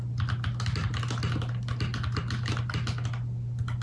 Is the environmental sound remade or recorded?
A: recorded